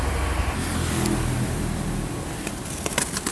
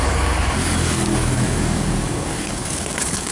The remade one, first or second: second